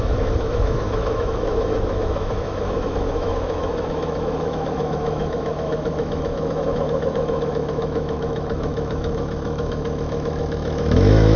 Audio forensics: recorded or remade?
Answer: remade